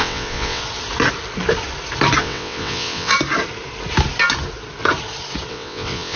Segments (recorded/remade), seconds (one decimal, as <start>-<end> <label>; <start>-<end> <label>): 0.0-0.6 remade; 0.6-2.2 recorded; 2.2-3.1 remade; 3.1-5.5 recorded; 5.5-6.2 remade